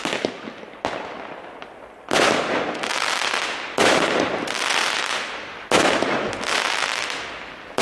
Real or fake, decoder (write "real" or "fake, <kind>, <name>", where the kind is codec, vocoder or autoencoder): real